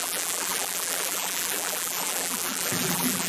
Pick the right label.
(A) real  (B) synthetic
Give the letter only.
B